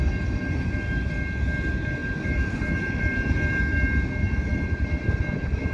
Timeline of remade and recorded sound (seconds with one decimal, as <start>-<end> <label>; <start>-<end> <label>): 0.0-2.0 recorded; 2.0-3.6 remade; 3.6-4.5 recorded; 4.5-5.2 remade; 5.2-5.7 recorded

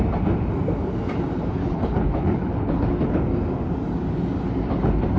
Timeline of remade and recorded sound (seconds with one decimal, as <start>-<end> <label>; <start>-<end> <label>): 0.0-1.6 recorded; 1.6-3.2 remade; 3.2-5.2 recorded

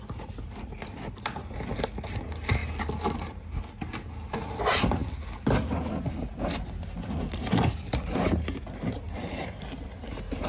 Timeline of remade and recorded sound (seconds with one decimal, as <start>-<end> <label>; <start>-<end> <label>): 0.0-10.5 recorded

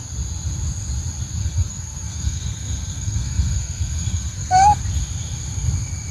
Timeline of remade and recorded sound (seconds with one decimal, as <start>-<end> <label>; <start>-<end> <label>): 0.0-1.4 recorded; 1.4-4.8 remade; 4.8-6.1 recorded